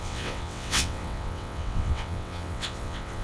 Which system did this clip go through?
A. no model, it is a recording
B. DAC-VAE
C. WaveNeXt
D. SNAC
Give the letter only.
C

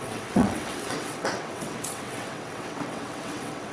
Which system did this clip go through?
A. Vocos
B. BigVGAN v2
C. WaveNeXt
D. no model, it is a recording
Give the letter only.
C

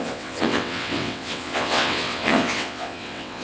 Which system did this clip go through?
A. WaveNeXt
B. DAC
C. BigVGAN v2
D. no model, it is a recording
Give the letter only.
A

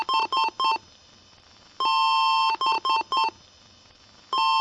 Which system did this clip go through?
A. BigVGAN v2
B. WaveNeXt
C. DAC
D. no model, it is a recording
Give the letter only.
D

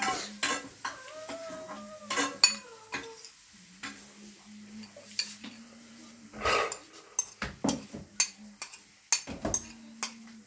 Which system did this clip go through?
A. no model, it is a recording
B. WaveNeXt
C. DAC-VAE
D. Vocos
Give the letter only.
A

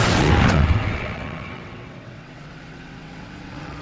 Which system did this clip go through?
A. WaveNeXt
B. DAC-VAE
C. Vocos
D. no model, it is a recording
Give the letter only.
A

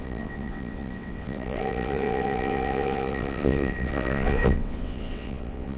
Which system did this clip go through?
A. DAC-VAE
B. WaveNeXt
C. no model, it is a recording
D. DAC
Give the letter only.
B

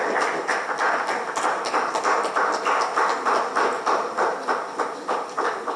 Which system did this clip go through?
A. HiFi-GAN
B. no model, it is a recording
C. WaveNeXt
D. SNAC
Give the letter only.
B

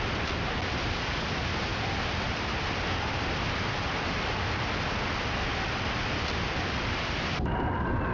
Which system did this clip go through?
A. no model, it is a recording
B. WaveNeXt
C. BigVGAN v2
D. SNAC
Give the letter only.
A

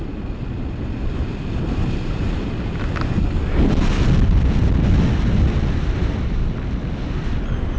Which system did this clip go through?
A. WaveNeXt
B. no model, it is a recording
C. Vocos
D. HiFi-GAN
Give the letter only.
B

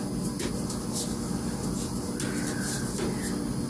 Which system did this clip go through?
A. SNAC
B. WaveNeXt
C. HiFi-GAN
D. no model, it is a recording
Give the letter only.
D